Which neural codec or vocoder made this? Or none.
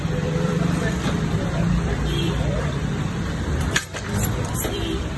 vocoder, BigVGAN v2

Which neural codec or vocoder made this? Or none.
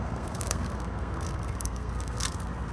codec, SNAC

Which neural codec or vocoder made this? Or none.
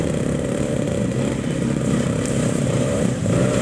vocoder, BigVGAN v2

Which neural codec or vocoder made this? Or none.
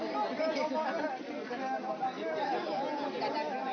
none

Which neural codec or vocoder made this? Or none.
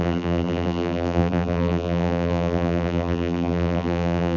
vocoder, BigVGAN v2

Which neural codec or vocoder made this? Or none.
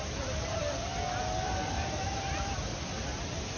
none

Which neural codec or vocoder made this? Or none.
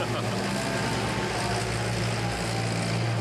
none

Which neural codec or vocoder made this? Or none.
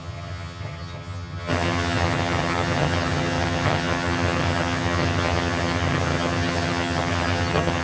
vocoder, HiFi-GAN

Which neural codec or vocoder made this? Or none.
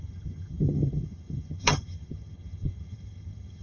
vocoder, HiFi-GAN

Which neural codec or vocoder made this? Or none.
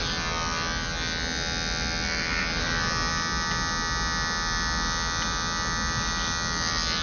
none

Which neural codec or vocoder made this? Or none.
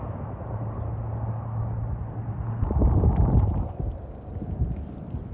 none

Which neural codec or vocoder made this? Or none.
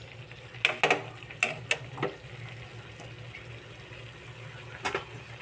none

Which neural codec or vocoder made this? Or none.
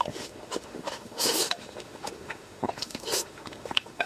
autoencoder, DAC-VAE